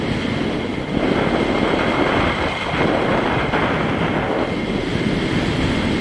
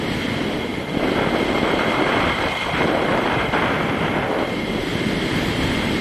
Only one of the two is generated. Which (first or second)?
second